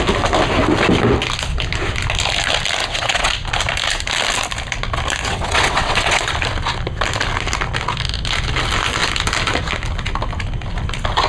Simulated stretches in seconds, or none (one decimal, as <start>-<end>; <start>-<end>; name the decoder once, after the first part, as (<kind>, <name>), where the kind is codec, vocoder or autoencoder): 2.8-3.3 (vocoder, WaveNeXt); 5.3-6.3